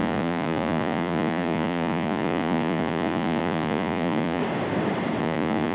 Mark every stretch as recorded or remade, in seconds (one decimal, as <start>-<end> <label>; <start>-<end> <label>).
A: 0.0-4.4 remade; 4.4-5.2 recorded; 5.2-5.7 remade